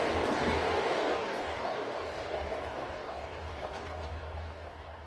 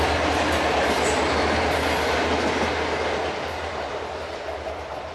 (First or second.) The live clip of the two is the second